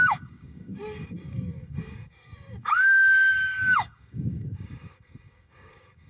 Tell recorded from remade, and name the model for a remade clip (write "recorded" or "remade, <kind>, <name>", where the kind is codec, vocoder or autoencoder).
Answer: remade, codec, DAC